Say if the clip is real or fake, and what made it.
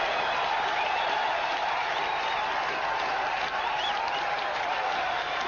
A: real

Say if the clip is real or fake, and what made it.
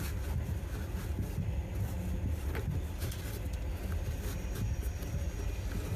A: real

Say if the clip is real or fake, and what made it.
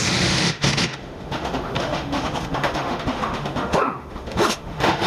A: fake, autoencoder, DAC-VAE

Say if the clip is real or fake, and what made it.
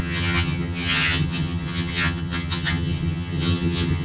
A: fake, vocoder, HiFi-GAN